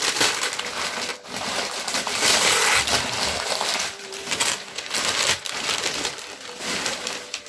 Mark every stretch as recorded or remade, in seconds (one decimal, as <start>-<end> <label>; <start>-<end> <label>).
0.0-7.5 recorded